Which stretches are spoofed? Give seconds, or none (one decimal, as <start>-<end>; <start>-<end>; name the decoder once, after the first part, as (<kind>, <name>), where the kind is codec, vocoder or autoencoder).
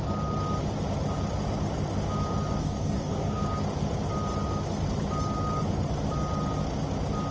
2.6-3.4 (codec, DAC)